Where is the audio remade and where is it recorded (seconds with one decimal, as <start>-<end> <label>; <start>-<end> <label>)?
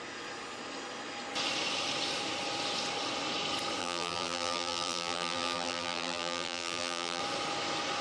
0.0-3.8 recorded; 3.8-7.2 remade; 7.2-8.0 recorded